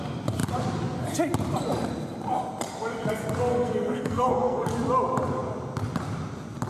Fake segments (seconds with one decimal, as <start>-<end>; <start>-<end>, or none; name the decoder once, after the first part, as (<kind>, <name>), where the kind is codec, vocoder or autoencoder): 3.5-4.7 (codec, SNAC)